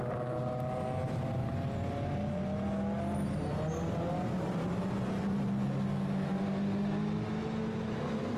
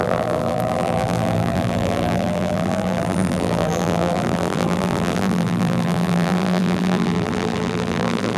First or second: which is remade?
second